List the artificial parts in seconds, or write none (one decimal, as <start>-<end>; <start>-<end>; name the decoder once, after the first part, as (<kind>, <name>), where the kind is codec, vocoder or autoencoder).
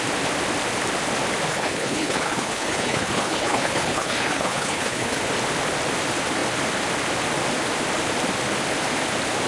1.5-5.2 (codec, HILCodec)